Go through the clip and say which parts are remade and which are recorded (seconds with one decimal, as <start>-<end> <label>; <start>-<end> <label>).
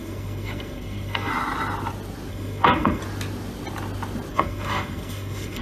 0.0-1.3 remade; 1.3-2.3 recorded; 2.3-3.0 remade; 3.0-4.3 recorded; 4.3-5.6 remade